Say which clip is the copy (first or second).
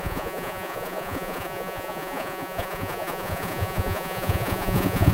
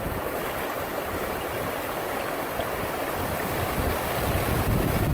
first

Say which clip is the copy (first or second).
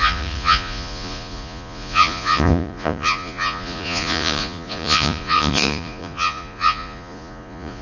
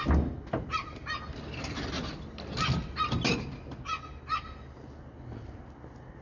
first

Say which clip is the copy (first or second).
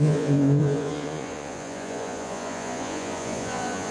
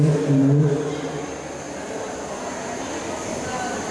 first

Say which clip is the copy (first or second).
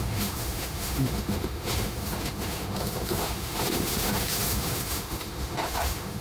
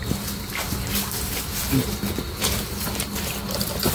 first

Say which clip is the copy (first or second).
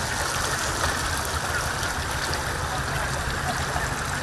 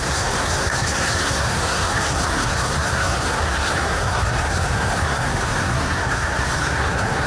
second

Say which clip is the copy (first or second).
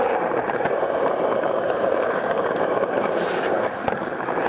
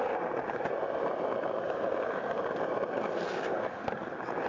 first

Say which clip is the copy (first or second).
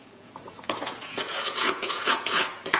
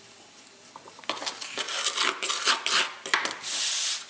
first